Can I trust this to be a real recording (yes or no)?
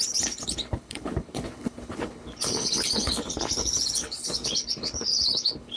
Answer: no